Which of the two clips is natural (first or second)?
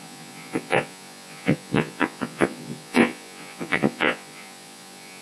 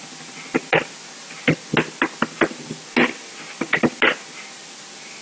second